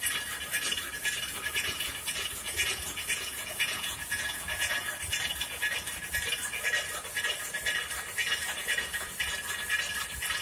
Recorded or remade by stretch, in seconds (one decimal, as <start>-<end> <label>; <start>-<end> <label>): 0.0-1.3 recorded; 1.3-4.9 remade; 4.9-8.2 recorded; 8.2-9.1 remade; 9.1-10.4 recorded